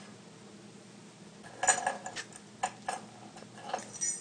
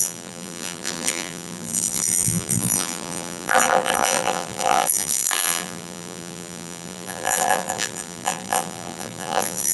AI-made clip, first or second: second